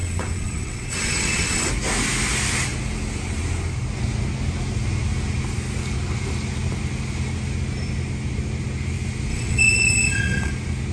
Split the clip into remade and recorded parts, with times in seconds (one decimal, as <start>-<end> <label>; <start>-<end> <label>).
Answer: 0.0-1.7 remade; 1.7-9.3 recorded; 9.3-10.5 remade; 10.5-10.9 recorded